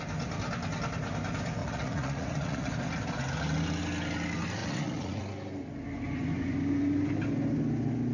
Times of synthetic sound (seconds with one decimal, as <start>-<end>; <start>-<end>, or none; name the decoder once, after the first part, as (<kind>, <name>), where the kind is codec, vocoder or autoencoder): 1.6-2.7 (vocoder, Vocos); 4.6-5.2